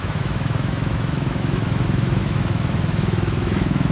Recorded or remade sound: remade